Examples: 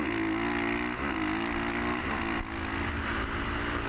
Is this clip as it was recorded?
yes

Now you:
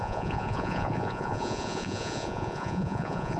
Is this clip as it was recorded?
no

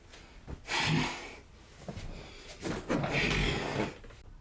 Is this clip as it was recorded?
yes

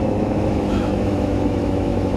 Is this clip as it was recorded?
no